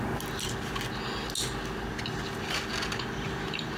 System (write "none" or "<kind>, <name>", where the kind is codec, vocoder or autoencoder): none